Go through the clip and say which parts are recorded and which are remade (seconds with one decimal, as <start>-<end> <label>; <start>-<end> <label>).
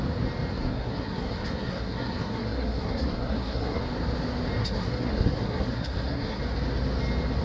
0.0-0.5 recorded; 0.5-3.8 remade; 3.8-4.6 recorded; 4.6-6.4 remade; 6.4-7.4 recorded